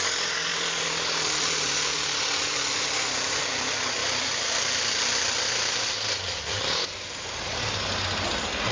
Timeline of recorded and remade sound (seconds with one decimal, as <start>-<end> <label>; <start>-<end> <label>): 0.0-0.5 recorded; 0.5-3.4 remade; 3.4-4.0 recorded; 4.0-7.4 remade; 7.4-8.7 recorded